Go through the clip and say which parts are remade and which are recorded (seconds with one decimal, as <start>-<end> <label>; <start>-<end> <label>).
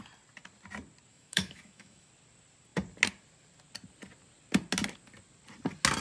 0.0-1.1 recorded; 1.1-2.1 remade; 2.1-6.0 recorded